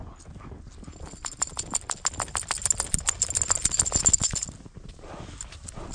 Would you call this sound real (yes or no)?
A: yes